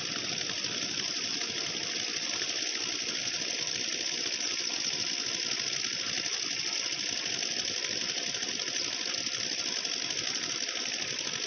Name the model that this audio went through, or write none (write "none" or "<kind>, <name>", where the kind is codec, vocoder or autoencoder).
none